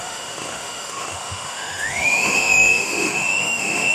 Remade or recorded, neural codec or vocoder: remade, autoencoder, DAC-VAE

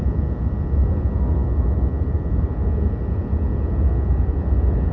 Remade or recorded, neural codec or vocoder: recorded